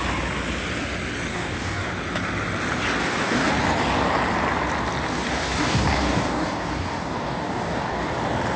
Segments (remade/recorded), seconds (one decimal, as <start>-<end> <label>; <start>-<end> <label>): 0.0-1.3 recorded; 1.3-1.9 remade; 1.9-3.0 recorded; 3.0-3.5 remade; 3.5-5.1 recorded; 5.1-8.1 remade; 8.1-8.6 recorded